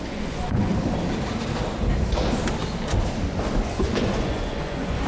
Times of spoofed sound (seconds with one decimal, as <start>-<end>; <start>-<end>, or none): 0.0-0.7; 3.6-5.1